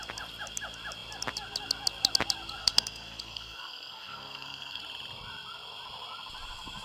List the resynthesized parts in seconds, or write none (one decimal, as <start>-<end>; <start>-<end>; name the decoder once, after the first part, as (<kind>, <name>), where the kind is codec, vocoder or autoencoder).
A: 2.6-4.8 (codec, SNAC)